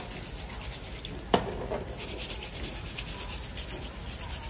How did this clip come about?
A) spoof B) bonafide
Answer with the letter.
B